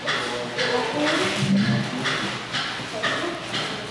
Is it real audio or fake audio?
real